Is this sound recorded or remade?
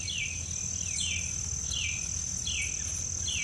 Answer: recorded